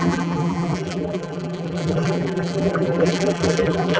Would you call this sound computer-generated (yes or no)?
yes